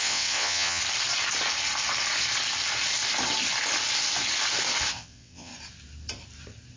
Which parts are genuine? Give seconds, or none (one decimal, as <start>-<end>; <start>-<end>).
0.8-4.9; 5.5-6.8